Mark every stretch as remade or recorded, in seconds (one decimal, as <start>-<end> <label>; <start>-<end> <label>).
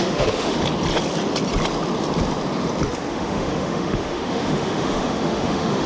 0.0-0.6 remade; 0.6-3.1 recorded; 3.1-5.9 remade